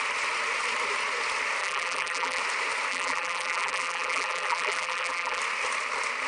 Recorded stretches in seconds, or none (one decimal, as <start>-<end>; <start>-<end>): 0.0-1.6; 2.4-2.9; 5.4-6.3